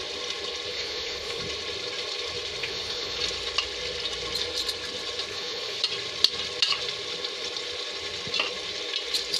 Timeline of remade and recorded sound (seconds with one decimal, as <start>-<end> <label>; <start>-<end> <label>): 0.0-0.7 recorded; 0.7-1.4 remade; 1.4-2.6 recorded; 2.6-3.2 remade; 3.2-5.3 recorded; 5.3-5.8 remade; 5.8-9.4 recorded